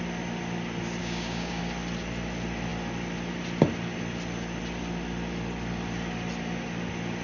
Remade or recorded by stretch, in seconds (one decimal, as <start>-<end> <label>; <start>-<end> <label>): 0.0-1.0 recorded; 1.0-1.6 remade; 1.6-7.2 recorded